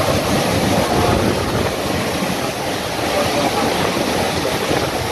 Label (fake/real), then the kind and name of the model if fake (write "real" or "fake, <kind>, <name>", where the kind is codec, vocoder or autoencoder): real